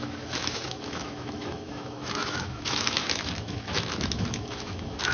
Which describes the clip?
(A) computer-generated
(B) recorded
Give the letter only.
A